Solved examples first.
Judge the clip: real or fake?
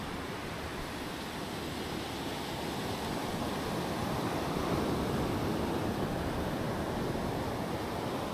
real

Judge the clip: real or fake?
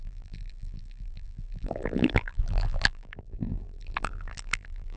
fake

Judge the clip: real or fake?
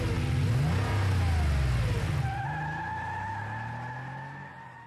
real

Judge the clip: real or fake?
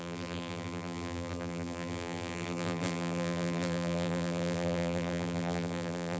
fake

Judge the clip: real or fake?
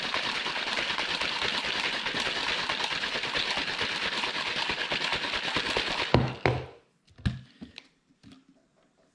real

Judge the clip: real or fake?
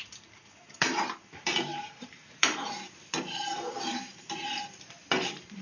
fake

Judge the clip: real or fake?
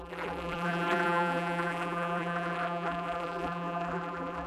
fake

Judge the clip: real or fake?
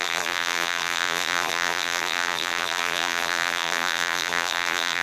fake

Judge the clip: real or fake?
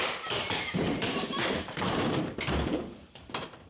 fake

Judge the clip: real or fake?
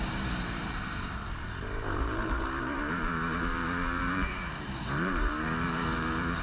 fake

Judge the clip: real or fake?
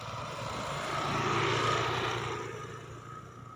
real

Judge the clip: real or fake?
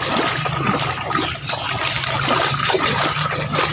fake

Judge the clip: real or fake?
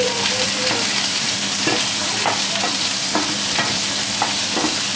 fake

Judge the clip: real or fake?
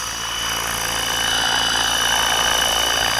real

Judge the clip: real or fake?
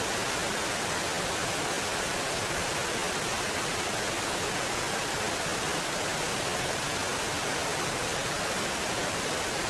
real